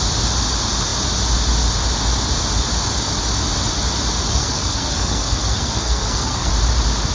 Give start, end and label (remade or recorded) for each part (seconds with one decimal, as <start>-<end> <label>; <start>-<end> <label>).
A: 0.0-4.3 recorded; 4.3-6.5 remade; 6.5-7.1 recorded